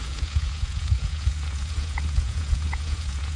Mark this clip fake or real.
fake